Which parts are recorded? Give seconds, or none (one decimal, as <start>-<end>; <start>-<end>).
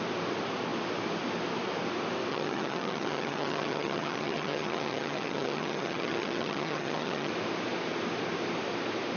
0.0-2.3; 7.3-9.2